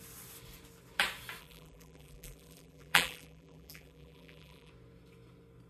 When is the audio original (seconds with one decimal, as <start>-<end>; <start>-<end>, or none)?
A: 0.0-1.4; 4.7-5.7